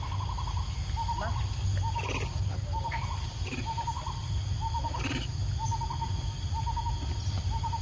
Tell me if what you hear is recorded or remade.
recorded